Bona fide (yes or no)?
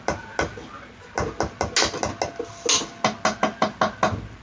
yes